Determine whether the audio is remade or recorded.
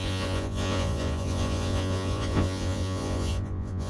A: remade